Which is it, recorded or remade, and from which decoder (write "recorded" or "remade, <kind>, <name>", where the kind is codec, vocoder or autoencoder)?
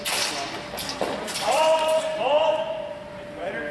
remade, vocoder, BigVGAN v2